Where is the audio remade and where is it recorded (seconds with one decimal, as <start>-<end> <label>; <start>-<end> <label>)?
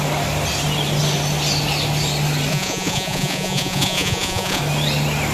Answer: 0.0-2.5 recorded; 2.5-4.6 remade; 4.6-5.3 recorded